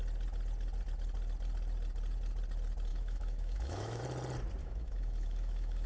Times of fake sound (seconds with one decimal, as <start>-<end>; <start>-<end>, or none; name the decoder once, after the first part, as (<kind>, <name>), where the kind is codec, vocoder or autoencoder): 2.9-4.0 (autoencoder, DAC-VAE); 4.6-5.9